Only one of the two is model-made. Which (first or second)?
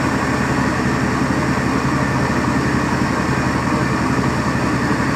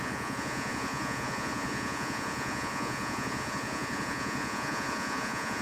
second